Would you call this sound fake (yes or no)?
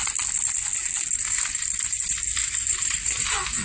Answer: no